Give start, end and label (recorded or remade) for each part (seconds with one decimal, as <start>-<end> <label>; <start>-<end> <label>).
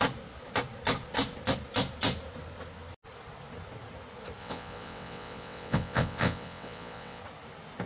0.0-4.4 recorded; 4.4-7.2 remade; 7.2-7.9 recorded